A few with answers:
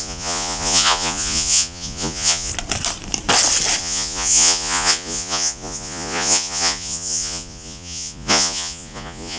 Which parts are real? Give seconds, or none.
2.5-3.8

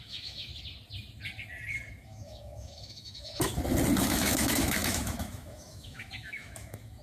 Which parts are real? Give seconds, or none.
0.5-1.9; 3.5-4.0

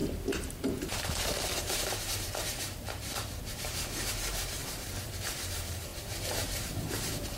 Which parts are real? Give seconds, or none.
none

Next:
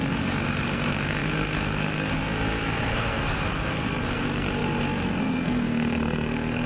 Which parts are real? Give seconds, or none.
none